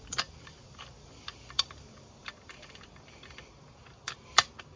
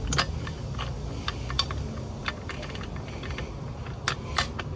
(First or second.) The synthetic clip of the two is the first